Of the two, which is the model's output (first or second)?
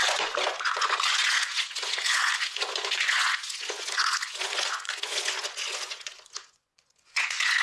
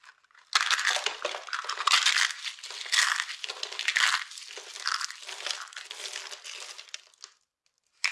first